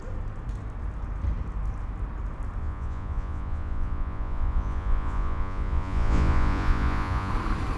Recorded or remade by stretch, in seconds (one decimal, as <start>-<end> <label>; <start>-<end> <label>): 0.0-2.6 recorded; 2.6-7.3 remade; 7.3-7.8 recorded

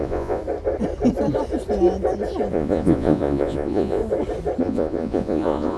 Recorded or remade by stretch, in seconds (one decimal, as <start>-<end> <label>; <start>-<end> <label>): 0.0-0.4 remade; 0.4-2.5 recorded; 2.5-4.0 remade; 4.0-4.6 recorded; 4.6-5.8 remade